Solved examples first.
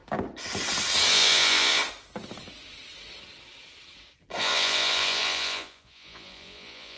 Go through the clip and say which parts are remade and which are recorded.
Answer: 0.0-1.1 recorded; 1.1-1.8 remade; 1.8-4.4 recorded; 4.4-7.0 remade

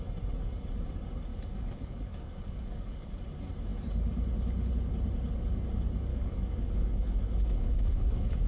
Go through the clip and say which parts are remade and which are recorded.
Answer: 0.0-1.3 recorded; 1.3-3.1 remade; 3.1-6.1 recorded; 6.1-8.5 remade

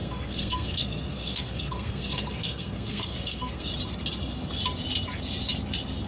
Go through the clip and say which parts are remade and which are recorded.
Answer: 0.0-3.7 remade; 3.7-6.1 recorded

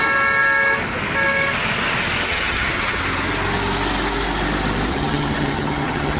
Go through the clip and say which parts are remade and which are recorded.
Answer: 0.0-2.3 recorded; 2.3-3.0 remade; 3.0-4.9 recorded; 4.9-6.2 remade